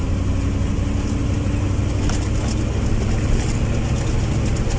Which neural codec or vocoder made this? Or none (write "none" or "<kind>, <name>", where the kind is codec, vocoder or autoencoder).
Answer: none